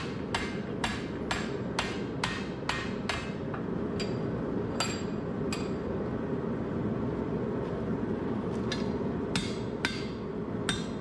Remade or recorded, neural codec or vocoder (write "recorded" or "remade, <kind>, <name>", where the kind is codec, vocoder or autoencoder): recorded